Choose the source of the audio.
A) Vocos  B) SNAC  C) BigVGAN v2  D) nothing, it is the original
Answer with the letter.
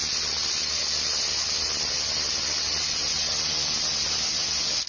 D